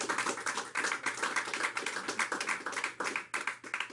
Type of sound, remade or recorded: recorded